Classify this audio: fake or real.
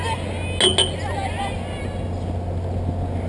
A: real